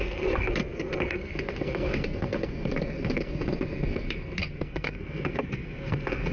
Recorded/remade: remade